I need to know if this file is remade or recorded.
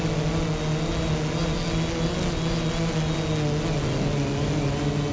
recorded